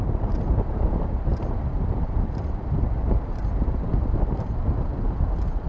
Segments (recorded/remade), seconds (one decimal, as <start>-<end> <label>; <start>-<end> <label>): 0.0-3.9 remade; 3.9-5.7 recorded